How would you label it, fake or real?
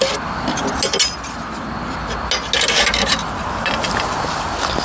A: real